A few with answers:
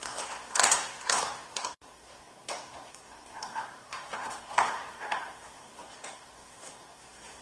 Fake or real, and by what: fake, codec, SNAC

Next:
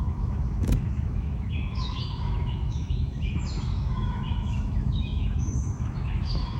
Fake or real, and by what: fake, autoencoder, DAC-VAE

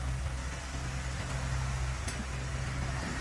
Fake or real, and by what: real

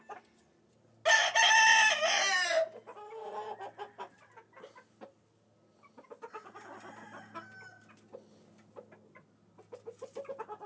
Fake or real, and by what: real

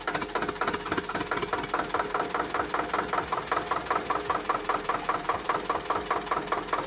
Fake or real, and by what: real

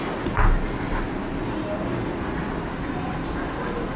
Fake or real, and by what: real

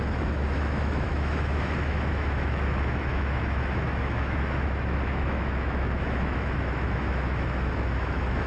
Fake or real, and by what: fake, autoencoder, DAC-VAE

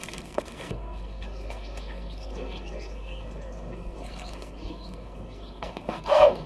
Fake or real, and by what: fake, codec, SNAC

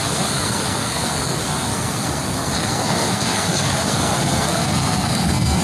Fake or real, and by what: fake, codec, SNAC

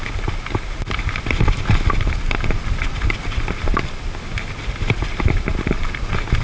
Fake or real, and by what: real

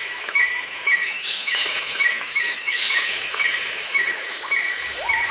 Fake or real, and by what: fake, autoencoder, DAC-VAE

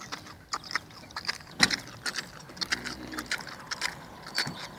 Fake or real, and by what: real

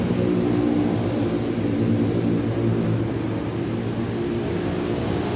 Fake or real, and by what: real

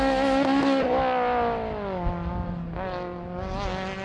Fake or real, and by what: real